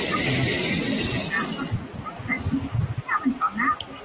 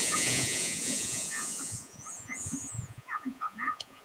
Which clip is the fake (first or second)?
second